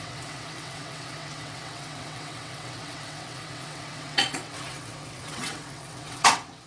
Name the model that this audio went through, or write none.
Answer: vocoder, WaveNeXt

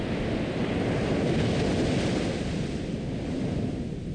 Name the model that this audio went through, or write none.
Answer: none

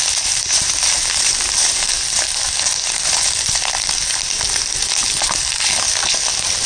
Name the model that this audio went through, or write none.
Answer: none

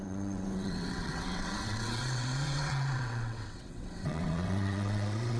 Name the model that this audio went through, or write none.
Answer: vocoder, WaveNeXt